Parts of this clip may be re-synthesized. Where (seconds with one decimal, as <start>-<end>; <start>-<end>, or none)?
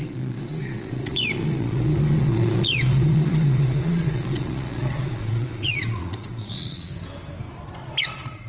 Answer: 0.0-6.9; 8.0-8.5